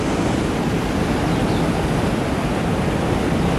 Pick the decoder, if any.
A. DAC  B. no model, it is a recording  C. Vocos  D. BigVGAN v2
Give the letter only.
B